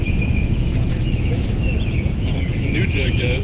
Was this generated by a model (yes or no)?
yes